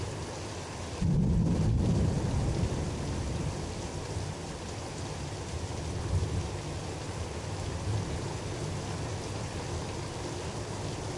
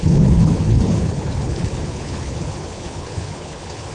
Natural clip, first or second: first